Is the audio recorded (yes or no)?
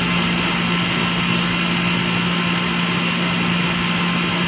yes